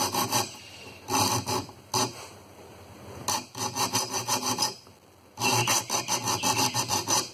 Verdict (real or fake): real